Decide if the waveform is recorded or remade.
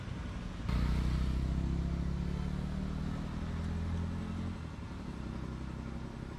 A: recorded